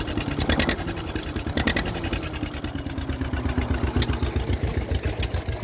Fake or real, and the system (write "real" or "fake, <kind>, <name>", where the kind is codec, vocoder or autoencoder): real